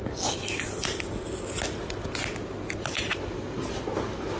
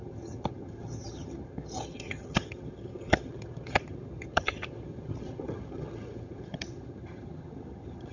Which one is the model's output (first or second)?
second